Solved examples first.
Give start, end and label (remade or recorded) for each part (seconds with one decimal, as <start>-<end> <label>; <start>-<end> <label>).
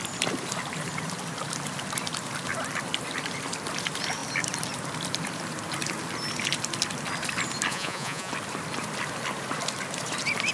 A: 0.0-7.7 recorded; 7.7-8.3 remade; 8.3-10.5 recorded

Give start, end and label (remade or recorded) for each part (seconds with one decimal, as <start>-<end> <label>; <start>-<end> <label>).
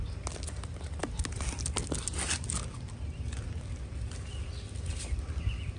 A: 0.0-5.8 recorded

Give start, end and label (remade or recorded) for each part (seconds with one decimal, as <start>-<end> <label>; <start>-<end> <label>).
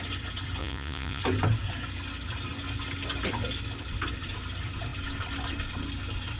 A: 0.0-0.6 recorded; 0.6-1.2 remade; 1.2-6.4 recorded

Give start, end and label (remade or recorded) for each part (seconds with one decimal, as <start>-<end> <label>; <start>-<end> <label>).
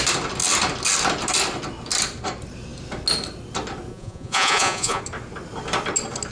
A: 0.0-3.9 recorded; 3.9-5.0 remade; 5.0-6.3 recorded